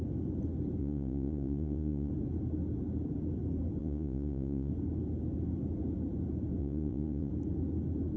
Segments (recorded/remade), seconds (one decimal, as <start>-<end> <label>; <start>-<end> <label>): 0.0-0.8 recorded; 0.8-2.1 remade; 2.1-3.8 recorded; 3.8-4.7 remade; 4.7-6.6 recorded; 6.6-7.3 remade; 7.3-8.2 recorded